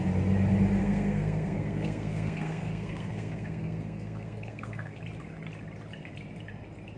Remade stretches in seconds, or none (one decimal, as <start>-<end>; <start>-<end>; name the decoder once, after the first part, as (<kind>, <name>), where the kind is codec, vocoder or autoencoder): 0.8-5.0 (codec, SNAC)